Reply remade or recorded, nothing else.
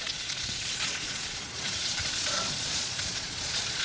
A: remade